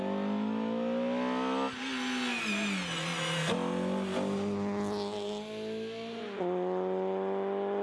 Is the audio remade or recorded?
recorded